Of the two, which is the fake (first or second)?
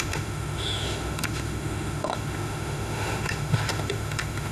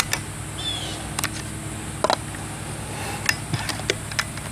first